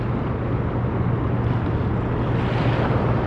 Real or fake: real